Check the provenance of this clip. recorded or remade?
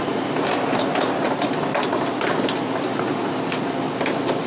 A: recorded